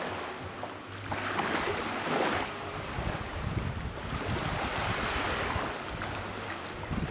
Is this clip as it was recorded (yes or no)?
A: yes